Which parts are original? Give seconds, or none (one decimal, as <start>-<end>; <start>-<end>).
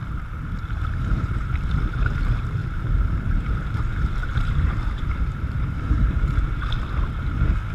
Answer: 1.7-2.6; 3.8-4.2; 6.1-7.7